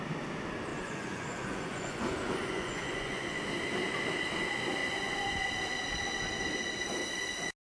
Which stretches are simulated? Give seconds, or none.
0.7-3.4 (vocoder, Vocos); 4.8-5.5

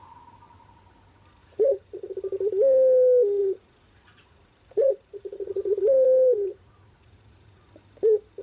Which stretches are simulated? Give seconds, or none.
1.4-2.1 (vocoder, Vocos); 3.4-7.7